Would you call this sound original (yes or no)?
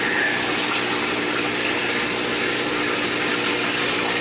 yes